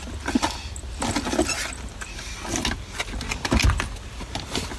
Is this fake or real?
real